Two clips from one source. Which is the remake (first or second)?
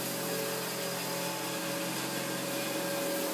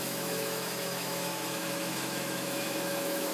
second